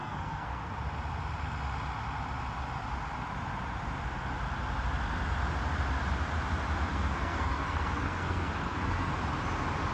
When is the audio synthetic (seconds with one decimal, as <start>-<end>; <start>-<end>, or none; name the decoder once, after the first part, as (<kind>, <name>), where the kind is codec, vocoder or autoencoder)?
0.0-0.7 (codec, SNAC); 6.9-9.1